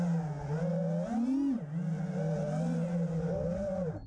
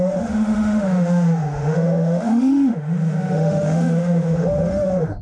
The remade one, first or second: second